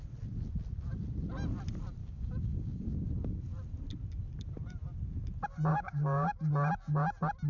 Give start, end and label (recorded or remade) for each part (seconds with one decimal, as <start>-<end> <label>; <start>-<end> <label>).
0.0-2.0 recorded; 2.0-3.1 remade; 3.1-5.7 recorded; 5.7-6.4 remade; 6.4-7.5 recorded

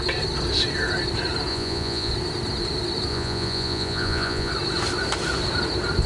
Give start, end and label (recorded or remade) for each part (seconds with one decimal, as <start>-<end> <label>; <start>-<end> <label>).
0.0-1.5 recorded; 1.5-2.1 remade; 2.1-3.1 recorded; 3.1-4.5 remade; 4.5-6.1 recorded

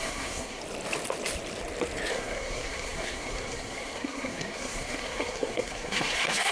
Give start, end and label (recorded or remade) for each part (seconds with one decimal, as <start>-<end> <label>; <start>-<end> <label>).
0.0-0.6 remade; 0.6-2.1 recorded; 2.1-6.5 remade